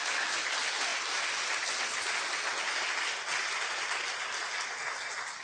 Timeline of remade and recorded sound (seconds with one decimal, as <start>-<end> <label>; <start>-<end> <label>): 0.0-5.4 recorded